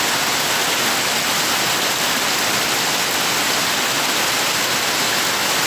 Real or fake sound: real